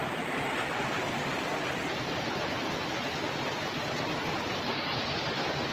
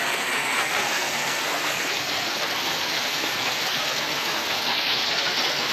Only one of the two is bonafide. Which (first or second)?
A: first